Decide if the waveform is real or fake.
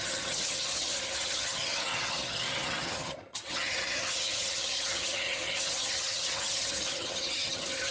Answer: fake